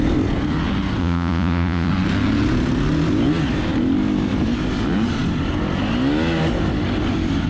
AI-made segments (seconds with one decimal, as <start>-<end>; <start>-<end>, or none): 1.0-1.9